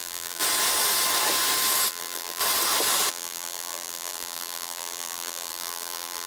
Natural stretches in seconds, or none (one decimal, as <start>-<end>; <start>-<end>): 0.4-1.9; 2.4-3.1